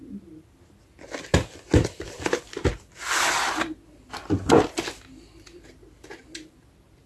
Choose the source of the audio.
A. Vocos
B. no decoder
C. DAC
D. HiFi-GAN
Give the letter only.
B